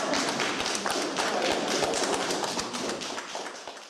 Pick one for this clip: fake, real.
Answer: real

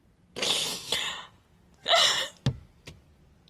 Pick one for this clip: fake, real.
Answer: real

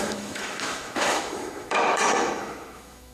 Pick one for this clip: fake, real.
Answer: fake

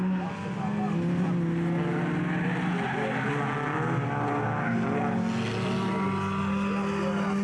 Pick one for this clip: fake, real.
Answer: real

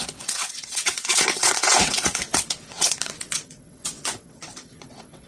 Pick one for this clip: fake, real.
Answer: fake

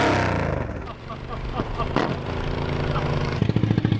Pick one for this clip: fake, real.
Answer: real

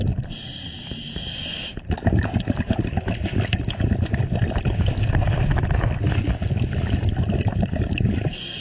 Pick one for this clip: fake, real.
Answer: real